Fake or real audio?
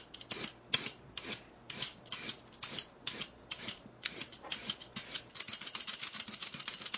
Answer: real